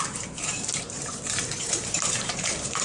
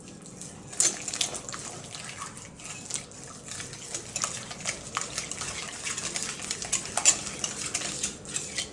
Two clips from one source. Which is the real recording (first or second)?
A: second